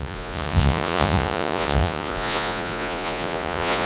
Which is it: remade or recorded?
remade